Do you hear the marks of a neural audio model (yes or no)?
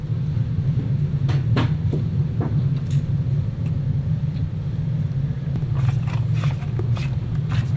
no